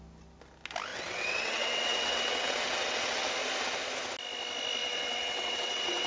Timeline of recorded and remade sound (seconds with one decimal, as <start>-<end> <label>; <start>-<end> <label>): 0.0-0.9 recorded; 0.9-3.3 remade; 3.3-4.8 recorded; 4.8-6.1 remade

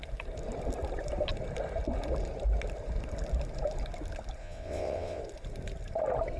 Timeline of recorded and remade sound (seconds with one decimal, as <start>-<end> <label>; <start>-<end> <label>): 0.0-4.4 recorded; 4.4-5.2 remade; 5.2-6.4 recorded

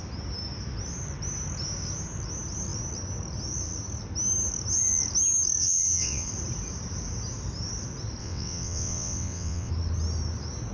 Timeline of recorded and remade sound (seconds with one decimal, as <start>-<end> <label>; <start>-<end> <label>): 0.0-5.6 recorded; 5.6-6.3 remade; 6.3-8.2 recorded; 8.2-9.7 remade; 9.7-10.7 recorded

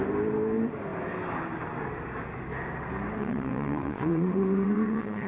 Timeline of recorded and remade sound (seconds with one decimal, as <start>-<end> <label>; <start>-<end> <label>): 0.0-3.2 recorded; 3.2-5.3 remade

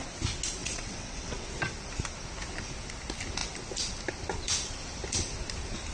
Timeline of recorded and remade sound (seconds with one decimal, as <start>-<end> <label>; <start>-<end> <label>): 0.0-0.6 recorded; 0.6-1.5 remade; 1.5-5.9 recorded

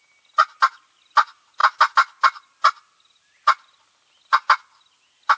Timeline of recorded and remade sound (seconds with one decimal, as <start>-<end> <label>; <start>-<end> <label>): 0.0-5.4 recorded

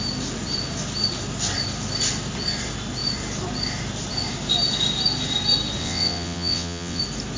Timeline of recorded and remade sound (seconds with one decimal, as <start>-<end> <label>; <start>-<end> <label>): 0.0-5.8 recorded; 5.8-7.0 remade; 7.0-7.4 recorded

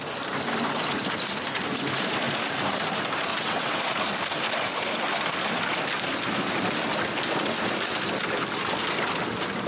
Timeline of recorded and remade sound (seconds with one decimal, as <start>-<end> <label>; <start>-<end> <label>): 0.0-3.3 recorded; 3.3-3.8 remade; 3.8-9.7 recorded